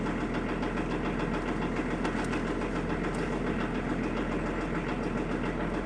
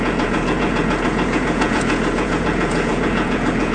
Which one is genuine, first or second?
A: first